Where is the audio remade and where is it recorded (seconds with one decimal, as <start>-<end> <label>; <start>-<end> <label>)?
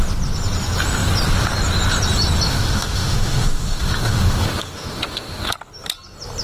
0.0-2.5 recorded; 2.5-5.5 remade; 5.5-6.4 recorded